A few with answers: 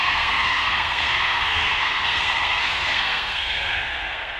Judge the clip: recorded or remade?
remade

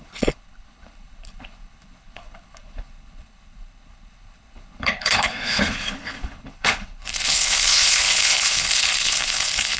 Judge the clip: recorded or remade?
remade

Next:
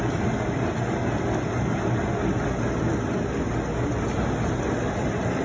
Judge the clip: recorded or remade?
recorded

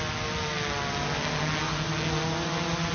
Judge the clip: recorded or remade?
recorded